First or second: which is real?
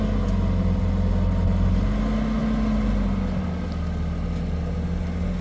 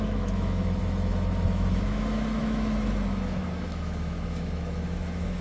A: first